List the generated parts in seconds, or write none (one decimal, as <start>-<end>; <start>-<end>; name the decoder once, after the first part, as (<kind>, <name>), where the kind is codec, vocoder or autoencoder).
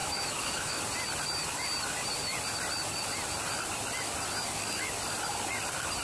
0.0-0.8 (autoencoder, DAC-VAE)